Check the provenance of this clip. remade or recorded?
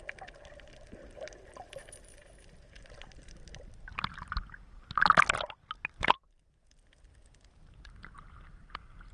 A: recorded